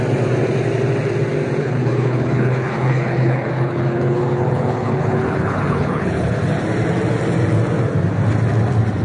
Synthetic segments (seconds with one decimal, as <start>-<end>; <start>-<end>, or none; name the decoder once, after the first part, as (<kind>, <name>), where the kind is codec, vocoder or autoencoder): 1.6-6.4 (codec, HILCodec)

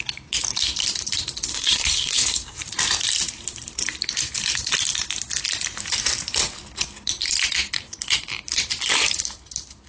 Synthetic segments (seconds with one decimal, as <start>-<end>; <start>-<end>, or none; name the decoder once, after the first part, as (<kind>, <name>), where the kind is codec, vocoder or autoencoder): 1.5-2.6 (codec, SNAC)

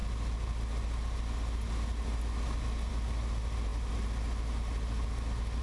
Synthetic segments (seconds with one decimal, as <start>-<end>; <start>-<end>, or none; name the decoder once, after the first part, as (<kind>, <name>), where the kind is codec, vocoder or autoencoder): none

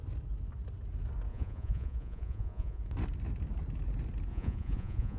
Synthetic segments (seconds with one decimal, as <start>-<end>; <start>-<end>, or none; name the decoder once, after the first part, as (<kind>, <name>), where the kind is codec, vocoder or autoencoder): 1.3-2.8 (vocoder, Vocos); 4.3-5.2